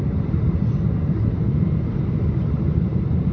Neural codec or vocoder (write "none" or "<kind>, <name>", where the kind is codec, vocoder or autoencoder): none